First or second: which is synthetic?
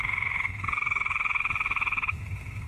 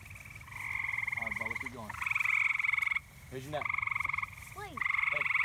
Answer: first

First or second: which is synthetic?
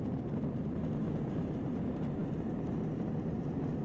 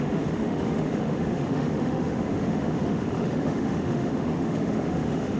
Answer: second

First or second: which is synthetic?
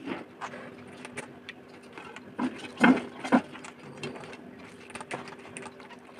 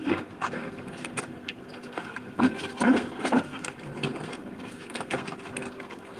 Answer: second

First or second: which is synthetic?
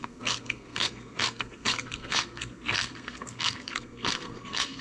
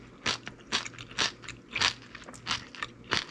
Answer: first